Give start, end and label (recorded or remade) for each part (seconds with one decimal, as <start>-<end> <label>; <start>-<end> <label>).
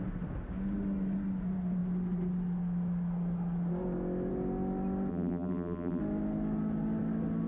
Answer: 0.0-5.1 recorded; 5.1-6.0 remade; 6.0-7.5 recorded